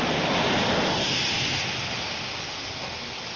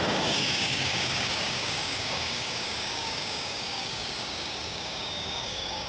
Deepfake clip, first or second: second